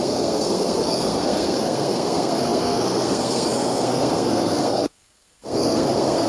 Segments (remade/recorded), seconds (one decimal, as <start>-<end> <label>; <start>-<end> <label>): 0.0-6.3 remade